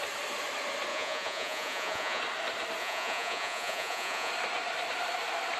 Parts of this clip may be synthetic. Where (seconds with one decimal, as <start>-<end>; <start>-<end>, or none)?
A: 0.9-2.2; 2.8-4.3